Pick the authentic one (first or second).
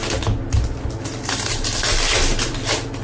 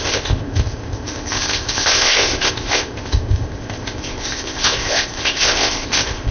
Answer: first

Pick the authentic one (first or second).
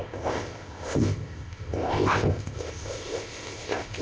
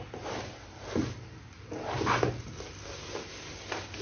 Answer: second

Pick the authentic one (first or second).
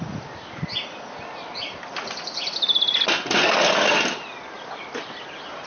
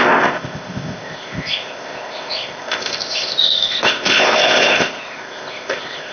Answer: first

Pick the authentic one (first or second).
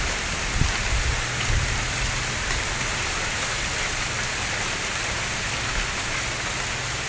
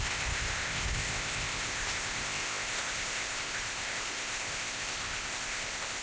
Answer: first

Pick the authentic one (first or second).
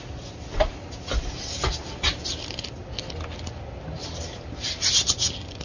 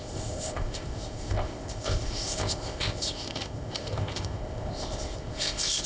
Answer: first